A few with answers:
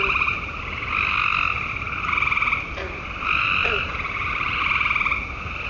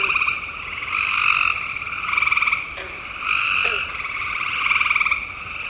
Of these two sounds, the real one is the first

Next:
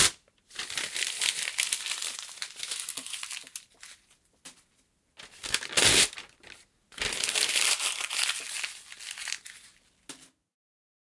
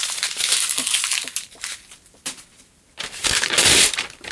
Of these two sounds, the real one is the first